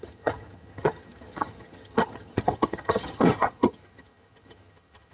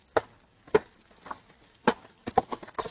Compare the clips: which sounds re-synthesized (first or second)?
first